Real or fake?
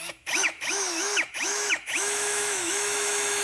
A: fake